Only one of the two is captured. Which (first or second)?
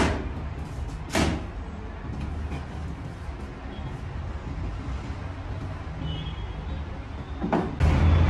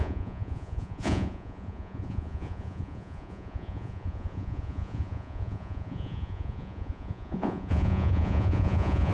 first